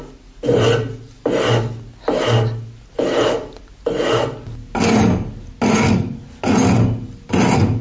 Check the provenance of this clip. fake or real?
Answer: real